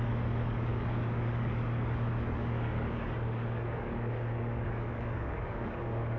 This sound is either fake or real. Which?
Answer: fake